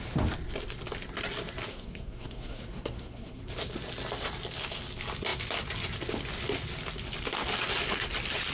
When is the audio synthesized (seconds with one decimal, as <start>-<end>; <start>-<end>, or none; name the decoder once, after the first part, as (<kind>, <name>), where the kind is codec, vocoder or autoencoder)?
1.7-3.4 (codec, SNAC)